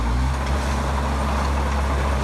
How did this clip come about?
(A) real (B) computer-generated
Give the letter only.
A